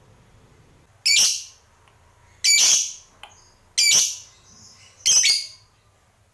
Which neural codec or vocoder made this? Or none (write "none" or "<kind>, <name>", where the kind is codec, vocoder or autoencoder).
none